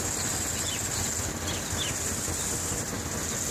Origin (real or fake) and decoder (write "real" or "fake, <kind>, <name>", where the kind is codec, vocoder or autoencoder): real